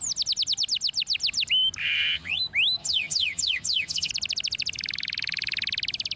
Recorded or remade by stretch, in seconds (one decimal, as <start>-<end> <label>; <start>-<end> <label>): 0.0-1.8 recorded; 1.8-2.4 remade; 2.4-2.8 recorded; 2.8-4.1 remade; 4.1-6.2 recorded